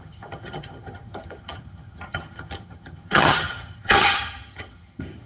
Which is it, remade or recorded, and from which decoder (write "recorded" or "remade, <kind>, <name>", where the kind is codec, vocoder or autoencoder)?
remade, vocoder, HiFi-GAN